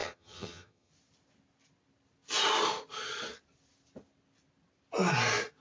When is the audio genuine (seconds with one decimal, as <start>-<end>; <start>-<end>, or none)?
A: 0.9-5.6